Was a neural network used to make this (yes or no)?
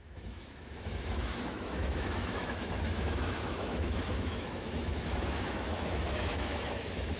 yes